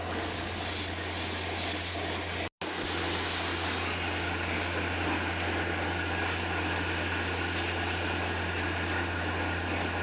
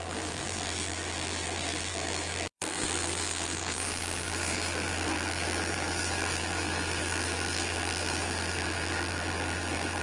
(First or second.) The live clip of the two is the first